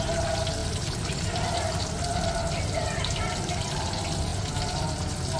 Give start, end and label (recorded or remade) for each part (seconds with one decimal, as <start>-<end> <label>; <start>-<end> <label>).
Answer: 0.0-0.6 recorded; 0.6-3.8 remade; 3.8-5.4 recorded